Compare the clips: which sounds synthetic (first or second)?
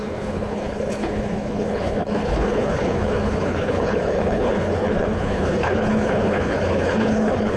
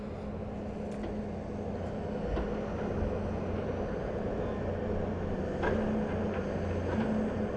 first